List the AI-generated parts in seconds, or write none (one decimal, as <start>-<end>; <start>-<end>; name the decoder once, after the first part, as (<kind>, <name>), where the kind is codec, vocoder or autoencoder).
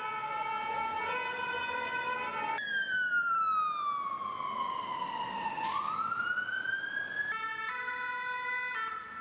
2.6-3.4 (vocoder, BigVGAN v2)